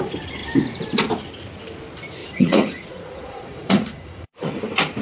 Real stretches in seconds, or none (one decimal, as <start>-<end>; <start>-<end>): 0.0-2.2; 4.6-5.0